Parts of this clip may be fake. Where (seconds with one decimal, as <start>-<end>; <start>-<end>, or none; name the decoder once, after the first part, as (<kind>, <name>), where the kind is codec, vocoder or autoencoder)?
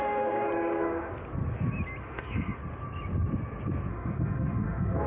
0.0-1.1 (autoencoder, DAC-VAE); 2.0-2.6; 3.9-5.1